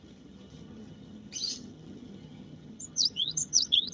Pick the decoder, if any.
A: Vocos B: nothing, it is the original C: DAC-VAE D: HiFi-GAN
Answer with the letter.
D